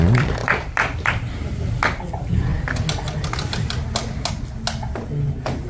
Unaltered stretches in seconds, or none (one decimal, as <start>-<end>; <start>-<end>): 0.0-0.4; 1.7-5.7